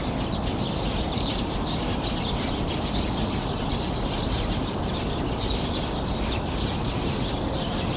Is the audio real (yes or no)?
no